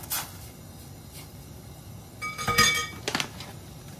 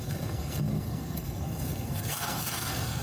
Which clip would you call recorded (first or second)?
first